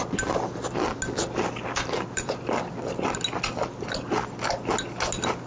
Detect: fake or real real